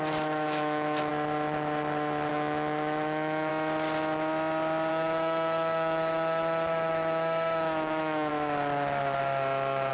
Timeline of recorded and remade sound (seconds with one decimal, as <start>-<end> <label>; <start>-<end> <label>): 0.0-1.1 remade; 1.1-2.3 recorded; 2.3-3.5 remade; 3.5-4.9 recorded; 4.9-8.3 remade; 8.3-9.9 recorded